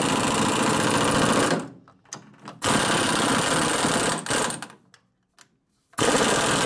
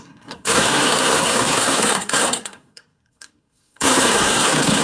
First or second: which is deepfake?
second